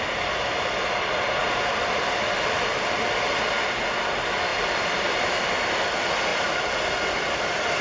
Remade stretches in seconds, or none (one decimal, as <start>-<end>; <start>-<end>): 1.4-2.0; 4.5-5.4; 6.3-6.9